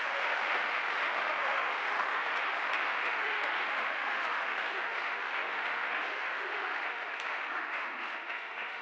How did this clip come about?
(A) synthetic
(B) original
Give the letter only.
A